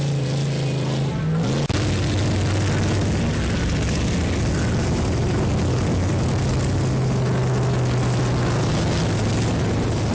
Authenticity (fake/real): real